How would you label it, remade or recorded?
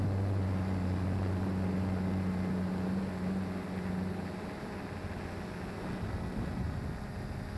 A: recorded